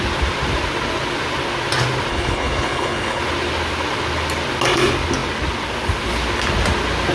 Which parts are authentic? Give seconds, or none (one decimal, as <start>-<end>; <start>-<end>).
0.0-2.1; 3.2-7.1